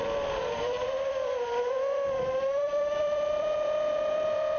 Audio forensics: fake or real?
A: fake